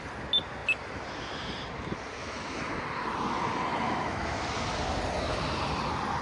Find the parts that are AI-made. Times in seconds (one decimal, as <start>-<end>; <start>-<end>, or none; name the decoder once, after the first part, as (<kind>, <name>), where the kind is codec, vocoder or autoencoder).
2.2-2.8 (autoencoder, DAC-VAE); 3.7-4.4